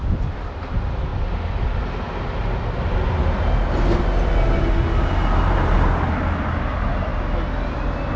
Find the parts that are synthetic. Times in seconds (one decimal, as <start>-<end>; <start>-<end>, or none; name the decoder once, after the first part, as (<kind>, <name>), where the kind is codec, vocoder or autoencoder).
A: none